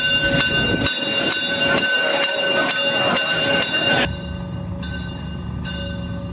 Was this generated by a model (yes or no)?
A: no